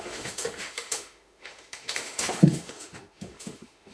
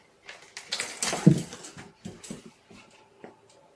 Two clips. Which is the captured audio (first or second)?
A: second